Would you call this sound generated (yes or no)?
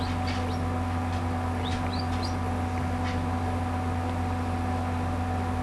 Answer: no